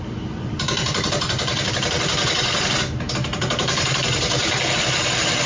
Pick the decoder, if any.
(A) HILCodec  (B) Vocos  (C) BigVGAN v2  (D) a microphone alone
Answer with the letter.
C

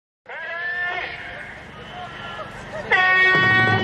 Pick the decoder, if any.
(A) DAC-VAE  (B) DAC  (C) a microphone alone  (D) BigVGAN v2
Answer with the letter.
C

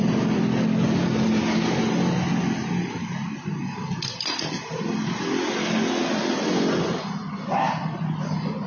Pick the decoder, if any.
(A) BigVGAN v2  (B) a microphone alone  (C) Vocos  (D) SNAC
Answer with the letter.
B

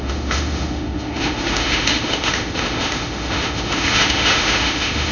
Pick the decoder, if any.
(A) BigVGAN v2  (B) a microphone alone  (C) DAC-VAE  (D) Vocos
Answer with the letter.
C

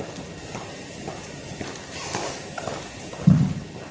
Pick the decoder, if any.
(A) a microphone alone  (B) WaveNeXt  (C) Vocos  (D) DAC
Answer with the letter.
A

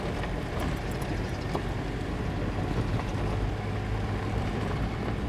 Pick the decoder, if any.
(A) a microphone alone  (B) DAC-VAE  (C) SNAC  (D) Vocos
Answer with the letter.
A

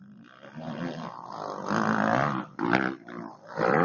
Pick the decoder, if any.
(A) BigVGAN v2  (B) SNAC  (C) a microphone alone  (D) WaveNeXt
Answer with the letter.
C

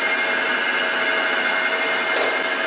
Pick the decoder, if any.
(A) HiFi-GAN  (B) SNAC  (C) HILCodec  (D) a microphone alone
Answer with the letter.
D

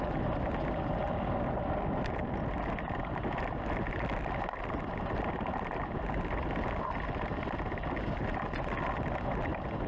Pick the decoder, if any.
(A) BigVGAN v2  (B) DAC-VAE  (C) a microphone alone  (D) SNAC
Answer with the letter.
C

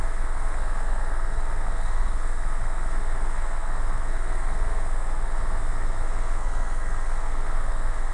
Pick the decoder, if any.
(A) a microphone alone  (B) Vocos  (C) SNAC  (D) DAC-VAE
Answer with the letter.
C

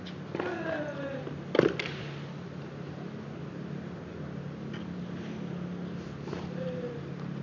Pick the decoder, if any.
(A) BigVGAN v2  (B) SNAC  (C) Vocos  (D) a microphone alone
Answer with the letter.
D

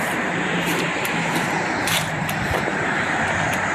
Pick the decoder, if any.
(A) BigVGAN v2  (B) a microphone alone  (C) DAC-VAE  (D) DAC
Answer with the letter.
A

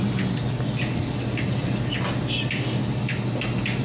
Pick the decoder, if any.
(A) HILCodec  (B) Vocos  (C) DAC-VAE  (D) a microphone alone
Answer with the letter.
D